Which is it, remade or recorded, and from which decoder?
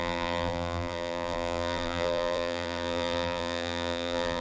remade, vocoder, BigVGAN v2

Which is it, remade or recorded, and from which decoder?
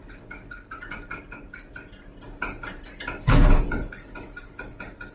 recorded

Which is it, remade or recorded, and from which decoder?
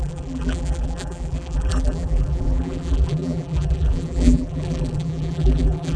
remade, vocoder, BigVGAN v2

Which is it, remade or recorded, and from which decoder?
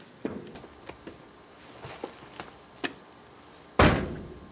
recorded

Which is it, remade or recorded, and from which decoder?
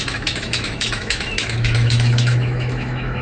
remade, autoencoder, DAC-VAE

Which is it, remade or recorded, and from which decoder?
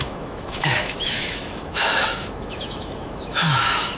remade, autoencoder, DAC-VAE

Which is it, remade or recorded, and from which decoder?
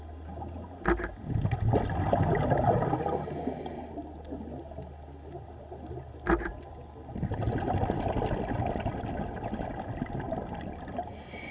recorded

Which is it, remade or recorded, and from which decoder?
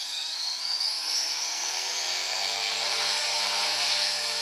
remade, codec, SNAC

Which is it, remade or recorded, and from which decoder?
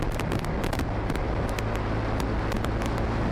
recorded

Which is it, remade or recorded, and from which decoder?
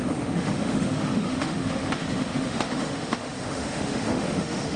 remade, autoencoder, DAC-VAE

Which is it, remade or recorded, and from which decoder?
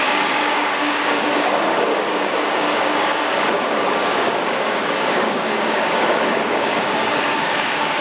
remade, codec, DAC